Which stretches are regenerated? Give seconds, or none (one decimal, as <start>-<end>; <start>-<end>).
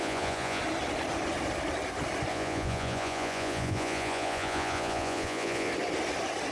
0.0-0.6; 2.3-5.7